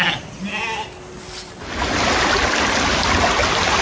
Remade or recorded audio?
recorded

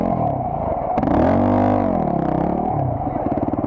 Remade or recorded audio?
recorded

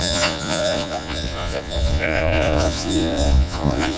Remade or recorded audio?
remade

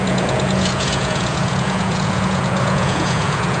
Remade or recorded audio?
remade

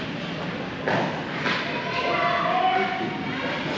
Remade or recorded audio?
recorded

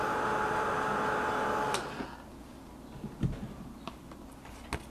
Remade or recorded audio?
recorded